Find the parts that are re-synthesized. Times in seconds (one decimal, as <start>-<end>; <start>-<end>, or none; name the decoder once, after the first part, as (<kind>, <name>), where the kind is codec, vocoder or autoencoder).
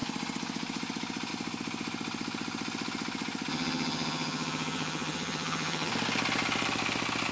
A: 3.5-5.9 (vocoder, HiFi-GAN)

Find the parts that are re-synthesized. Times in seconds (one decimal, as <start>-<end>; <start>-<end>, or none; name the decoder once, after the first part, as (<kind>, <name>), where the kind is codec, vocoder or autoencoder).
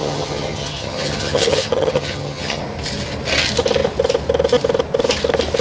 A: 0.0-2.6 (vocoder, HiFi-GAN)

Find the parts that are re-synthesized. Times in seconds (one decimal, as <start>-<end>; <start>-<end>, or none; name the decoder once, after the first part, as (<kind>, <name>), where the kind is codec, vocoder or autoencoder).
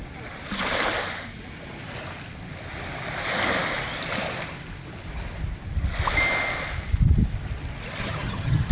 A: 8.0-8.7 (vocoder, HiFi-GAN)